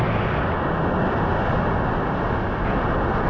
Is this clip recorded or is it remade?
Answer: recorded